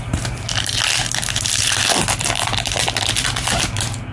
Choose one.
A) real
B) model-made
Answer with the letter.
A